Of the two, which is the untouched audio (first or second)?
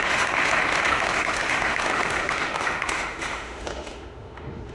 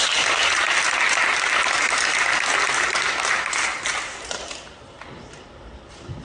second